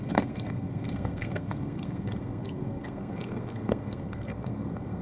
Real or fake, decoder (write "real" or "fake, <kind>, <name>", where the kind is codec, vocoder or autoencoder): fake, codec, SNAC